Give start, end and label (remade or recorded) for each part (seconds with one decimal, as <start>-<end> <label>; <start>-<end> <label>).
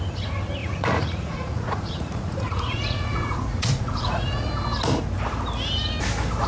0.0-0.6 recorded; 0.6-4.5 remade; 4.5-6.5 recorded